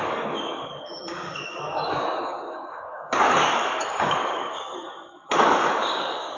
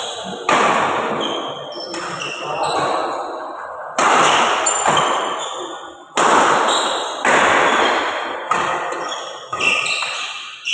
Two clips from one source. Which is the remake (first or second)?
first